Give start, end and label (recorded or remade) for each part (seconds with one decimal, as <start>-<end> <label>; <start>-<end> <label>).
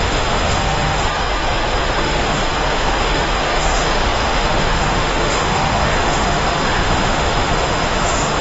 0.0-8.4 remade